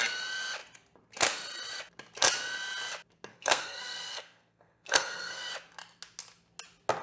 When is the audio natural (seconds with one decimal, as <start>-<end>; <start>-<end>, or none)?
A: 0.0-3.3; 5.5-7.0

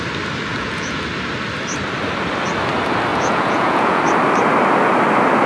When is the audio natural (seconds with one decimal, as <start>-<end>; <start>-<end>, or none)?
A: 0.0-0.5; 1.0-3.1; 4.0-5.5

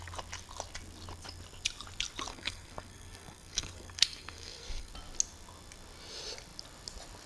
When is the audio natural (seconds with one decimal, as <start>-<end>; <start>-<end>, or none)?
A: 0.0-2.3; 4.9-7.3

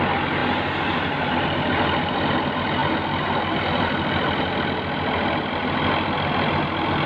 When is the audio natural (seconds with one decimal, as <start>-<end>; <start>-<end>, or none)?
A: 0.0-7.1

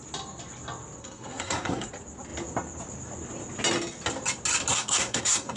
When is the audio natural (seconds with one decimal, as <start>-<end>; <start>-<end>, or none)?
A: 0.0-1.0; 1.9-4.7

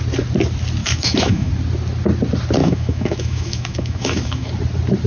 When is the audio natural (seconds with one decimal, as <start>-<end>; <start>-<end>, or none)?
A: 0.0-0.8; 1.5-2.6; 4.5-5.1

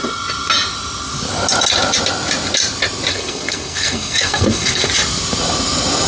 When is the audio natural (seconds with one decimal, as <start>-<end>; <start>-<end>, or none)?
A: 0.0-3.1; 4.9-6.1